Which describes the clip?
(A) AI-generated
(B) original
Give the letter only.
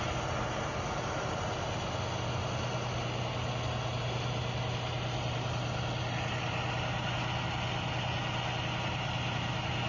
B